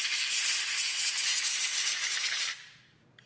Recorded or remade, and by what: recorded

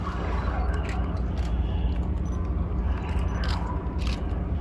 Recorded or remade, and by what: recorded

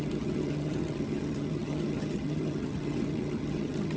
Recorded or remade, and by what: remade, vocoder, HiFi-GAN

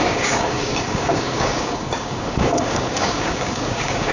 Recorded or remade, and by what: remade, codec, DAC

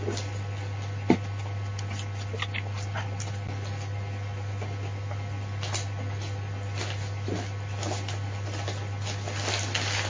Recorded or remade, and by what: recorded